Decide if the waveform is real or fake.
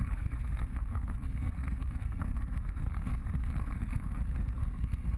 fake